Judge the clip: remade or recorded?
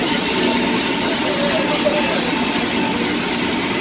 recorded